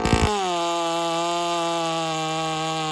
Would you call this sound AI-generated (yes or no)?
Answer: no